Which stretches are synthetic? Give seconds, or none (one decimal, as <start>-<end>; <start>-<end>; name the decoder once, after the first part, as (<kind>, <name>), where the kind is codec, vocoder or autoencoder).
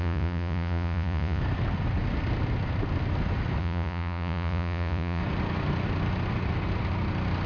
0.0-1.4 (vocoder, Vocos); 3.6-5.2